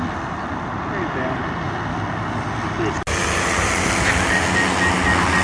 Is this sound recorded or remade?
recorded